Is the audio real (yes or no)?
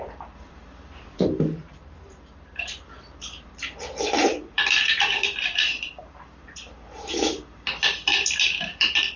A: no